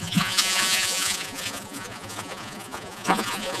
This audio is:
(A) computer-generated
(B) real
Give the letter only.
A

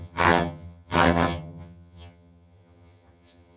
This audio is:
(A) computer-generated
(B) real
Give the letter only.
A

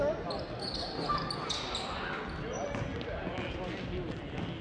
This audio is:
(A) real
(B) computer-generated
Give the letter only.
A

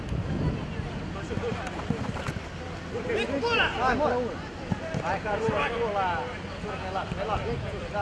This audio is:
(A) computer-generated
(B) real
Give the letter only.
B